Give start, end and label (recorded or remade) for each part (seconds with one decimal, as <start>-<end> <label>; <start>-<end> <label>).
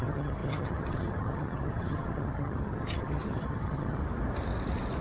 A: 0.0-4.0 remade; 4.0-5.0 recorded